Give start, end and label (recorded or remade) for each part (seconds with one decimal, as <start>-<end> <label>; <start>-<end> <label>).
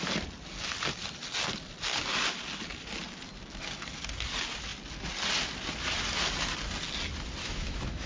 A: 0.0-7.4 recorded; 7.4-8.1 remade